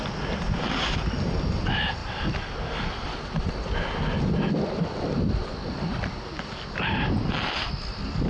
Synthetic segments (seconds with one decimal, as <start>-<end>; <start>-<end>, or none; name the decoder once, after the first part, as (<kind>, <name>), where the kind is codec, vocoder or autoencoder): none